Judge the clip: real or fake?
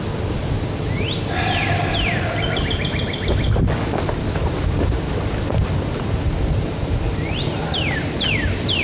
real